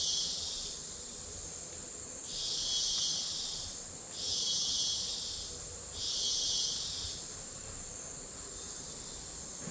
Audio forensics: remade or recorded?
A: recorded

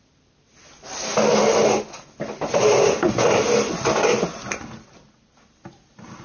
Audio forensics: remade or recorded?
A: recorded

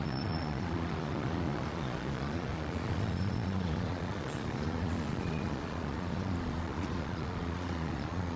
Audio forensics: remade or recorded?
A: remade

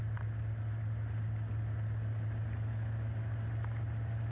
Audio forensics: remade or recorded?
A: recorded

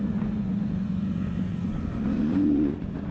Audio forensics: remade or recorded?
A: remade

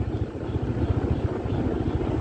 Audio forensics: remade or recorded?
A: recorded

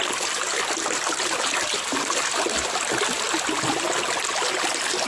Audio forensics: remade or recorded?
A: recorded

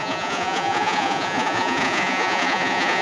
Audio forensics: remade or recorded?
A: remade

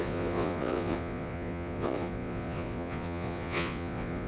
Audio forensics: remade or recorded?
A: remade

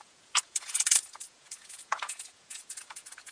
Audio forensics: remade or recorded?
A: remade